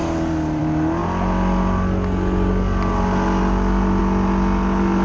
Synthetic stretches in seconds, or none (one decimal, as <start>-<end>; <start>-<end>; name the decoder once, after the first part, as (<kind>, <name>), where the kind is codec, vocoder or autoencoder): none